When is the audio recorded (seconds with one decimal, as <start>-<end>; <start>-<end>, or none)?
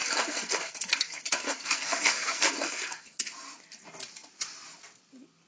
3.3-5.5